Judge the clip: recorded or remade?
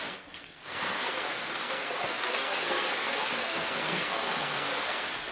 remade